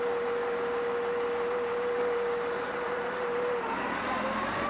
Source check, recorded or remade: remade